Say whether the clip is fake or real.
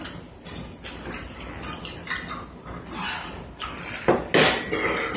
real